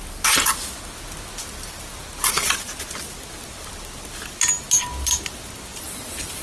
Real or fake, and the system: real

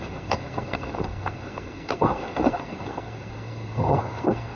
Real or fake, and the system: fake, codec, SNAC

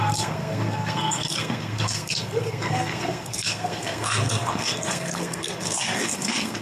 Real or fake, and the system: fake, codec, SNAC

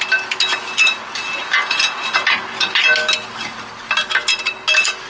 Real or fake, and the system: real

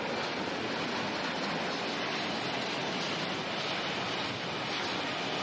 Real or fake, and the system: real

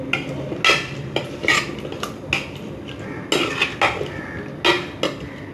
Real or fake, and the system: real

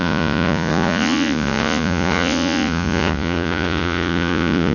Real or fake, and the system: fake, vocoder, Vocos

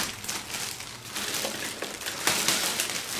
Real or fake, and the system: real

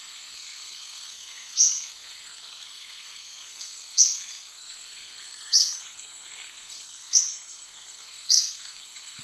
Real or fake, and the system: fake, codec, SNAC